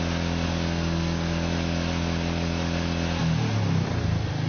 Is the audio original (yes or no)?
yes